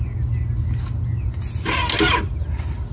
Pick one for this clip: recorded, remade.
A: recorded